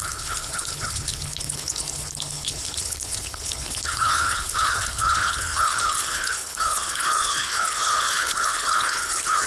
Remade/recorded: remade